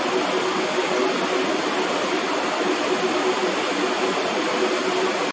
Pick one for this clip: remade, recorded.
recorded